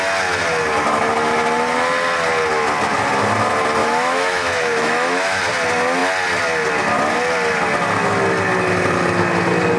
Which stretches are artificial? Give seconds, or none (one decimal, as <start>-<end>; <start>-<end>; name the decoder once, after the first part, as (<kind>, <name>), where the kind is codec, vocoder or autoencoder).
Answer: 3.8-5.4 (autoencoder, DAC-VAE)